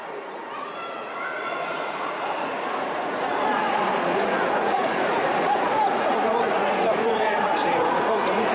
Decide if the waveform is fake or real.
fake